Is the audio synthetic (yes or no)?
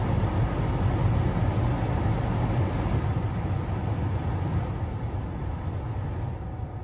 no